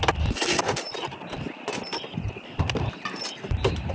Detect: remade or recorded recorded